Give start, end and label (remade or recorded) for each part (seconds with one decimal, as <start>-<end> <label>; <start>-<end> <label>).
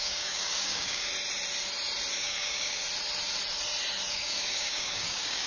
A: 0.0-1.1 remade; 1.1-2.1 recorded; 2.1-2.8 remade; 2.8-4.1 recorded; 4.1-5.5 remade